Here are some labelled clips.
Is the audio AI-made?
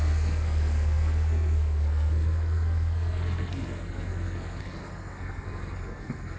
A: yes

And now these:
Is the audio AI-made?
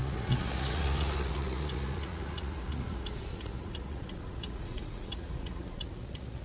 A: yes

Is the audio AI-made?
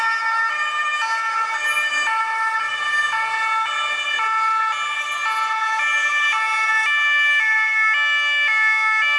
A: no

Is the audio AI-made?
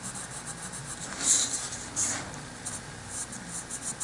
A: no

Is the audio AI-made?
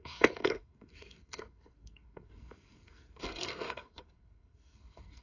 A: yes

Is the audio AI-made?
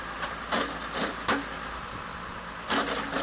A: no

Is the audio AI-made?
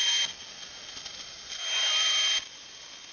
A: no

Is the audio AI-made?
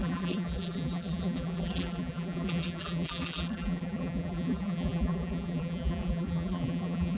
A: yes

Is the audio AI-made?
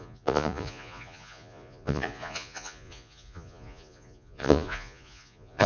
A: yes